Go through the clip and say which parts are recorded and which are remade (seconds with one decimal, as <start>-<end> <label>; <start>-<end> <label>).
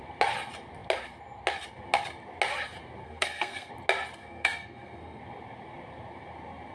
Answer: 0.0-3.0 recorded; 3.0-3.7 remade; 3.7-4.2 recorded; 4.2-5.2 remade; 5.2-6.7 recorded